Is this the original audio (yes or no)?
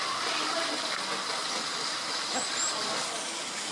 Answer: yes